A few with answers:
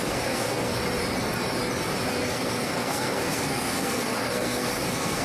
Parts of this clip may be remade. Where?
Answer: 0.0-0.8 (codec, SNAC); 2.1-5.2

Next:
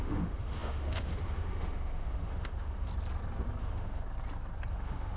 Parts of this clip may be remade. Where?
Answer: 0.0-2.9 (autoencoder, DAC-VAE); 3.6-4.0; 4.7-5.2